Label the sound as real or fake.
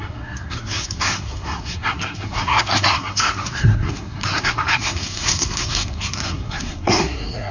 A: fake